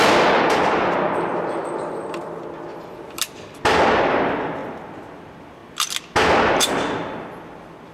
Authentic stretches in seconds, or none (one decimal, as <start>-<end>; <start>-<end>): 0.0-7.9